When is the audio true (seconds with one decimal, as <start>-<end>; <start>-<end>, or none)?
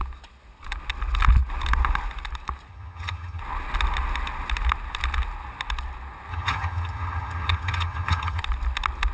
0.0-2.7; 3.4-6.3; 8.4-9.1